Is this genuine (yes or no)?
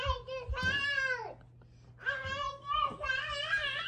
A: yes